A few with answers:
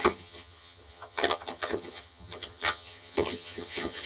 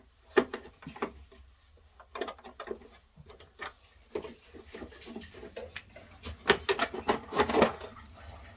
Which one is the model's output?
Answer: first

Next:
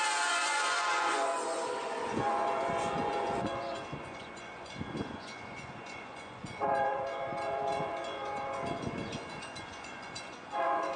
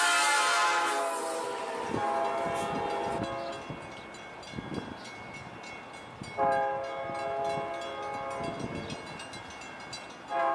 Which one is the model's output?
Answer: first